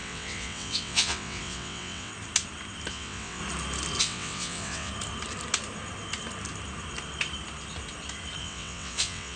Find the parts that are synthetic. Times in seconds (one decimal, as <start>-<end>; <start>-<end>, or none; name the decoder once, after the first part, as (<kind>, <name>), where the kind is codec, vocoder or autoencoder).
0.0-2.1 (vocoder, WaveNeXt); 2.9-3.4; 4.0-4.9; 8.4-9.4